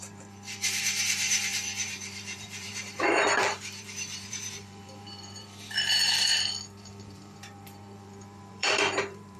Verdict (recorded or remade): remade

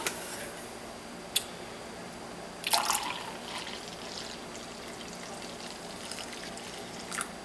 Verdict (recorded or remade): recorded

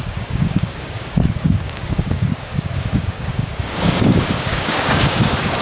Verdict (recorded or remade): remade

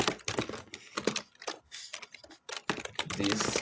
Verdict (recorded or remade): recorded